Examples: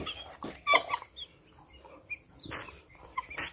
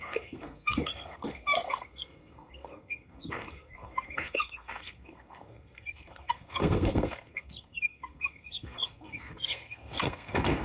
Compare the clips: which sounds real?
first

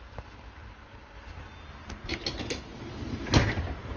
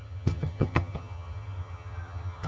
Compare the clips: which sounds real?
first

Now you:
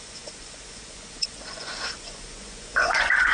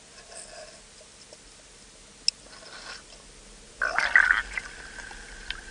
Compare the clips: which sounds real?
second